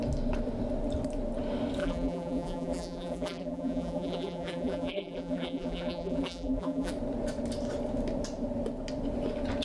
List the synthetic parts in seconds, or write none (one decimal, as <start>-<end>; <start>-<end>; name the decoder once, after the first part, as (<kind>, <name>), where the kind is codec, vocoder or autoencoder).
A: 1.8-6.9 (vocoder, BigVGAN v2)